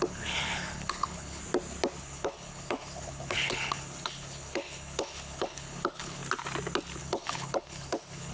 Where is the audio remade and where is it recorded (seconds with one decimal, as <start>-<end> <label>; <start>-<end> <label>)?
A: 0.0-1.4 remade; 1.4-2.0 recorded; 2.0-6.2 remade; 6.2-7.0 recorded; 7.0-8.3 remade